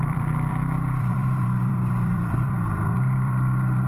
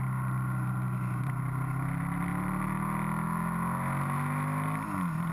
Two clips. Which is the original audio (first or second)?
second